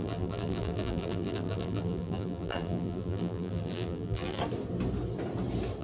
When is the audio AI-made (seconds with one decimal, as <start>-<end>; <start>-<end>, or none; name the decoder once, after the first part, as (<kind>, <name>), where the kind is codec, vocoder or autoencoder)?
0.0-4.4 (vocoder, BigVGAN v2)